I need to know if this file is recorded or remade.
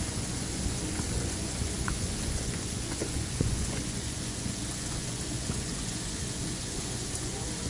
remade